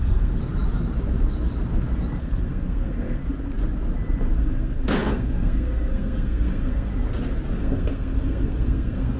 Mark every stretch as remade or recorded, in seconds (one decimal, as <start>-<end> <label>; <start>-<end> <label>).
0.0-0.4 remade; 0.4-2.2 recorded; 2.2-3.2 remade; 3.2-4.3 recorded; 4.3-6.9 remade; 6.9-7.5 recorded; 7.5-9.2 remade